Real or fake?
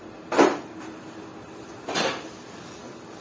real